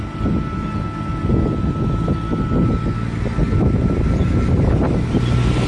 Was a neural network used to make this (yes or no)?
no